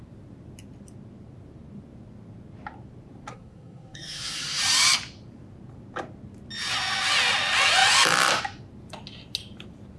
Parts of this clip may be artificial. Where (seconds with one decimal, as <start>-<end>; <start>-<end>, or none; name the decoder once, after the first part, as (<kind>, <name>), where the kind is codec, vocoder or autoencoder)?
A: 3.3-4.6 (codec, SNAC)